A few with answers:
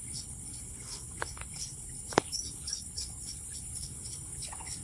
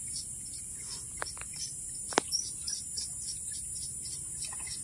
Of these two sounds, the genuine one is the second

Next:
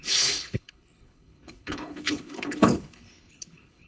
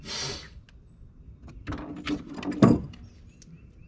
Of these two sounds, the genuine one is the second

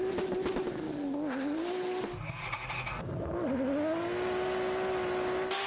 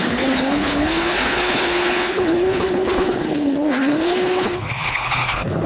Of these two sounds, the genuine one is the first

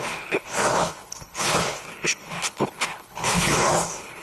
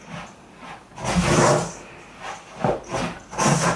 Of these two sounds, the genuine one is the second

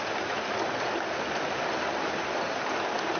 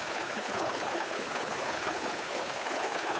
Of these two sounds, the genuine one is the first